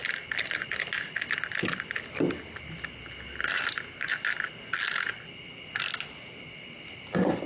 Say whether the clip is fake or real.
real